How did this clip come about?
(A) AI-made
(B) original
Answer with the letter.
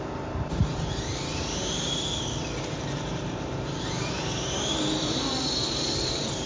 A